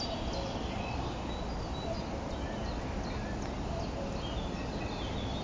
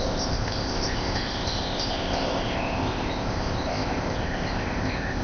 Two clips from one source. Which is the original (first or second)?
first